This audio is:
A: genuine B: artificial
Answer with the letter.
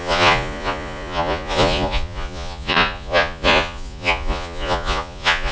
B